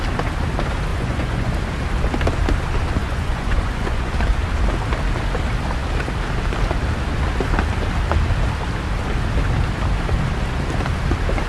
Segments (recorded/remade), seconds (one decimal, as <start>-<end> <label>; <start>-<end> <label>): 0.0-0.9 recorded; 0.9-1.5 remade; 1.5-3.0 recorded; 3.0-4.1 remade; 4.1-11.5 recorded